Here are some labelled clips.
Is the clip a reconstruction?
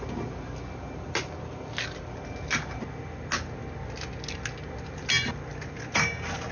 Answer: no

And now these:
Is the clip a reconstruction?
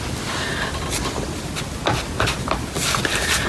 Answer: no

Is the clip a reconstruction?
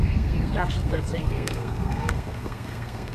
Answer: yes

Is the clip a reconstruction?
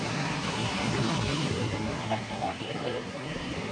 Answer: yes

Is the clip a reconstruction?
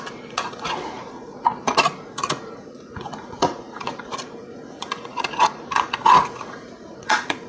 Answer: yes